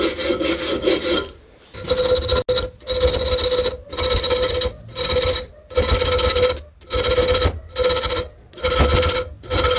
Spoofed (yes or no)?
no